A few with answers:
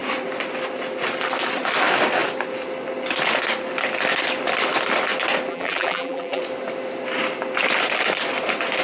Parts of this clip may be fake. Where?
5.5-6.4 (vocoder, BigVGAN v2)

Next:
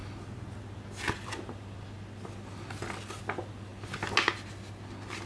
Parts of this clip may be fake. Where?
none

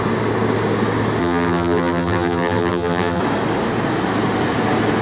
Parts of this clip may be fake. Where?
1.2-3.2 (vocoder, BigVGAN v2)

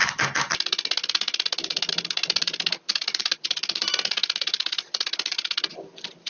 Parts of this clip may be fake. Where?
none

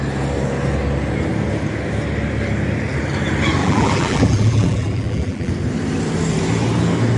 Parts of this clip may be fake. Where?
3.6-5.5 (vocoder, BigVGAN v2)

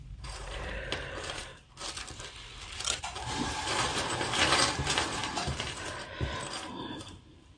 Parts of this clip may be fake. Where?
0.0-1.5 (vocoder, BigVGAN v2); 3.0-7.6

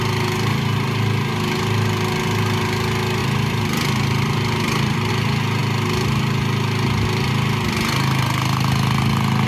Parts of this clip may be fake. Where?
3.2-5.1 (vocoder, BigVGAN v2)

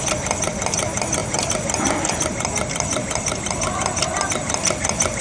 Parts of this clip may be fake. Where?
none